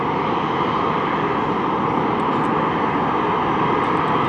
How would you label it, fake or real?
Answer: real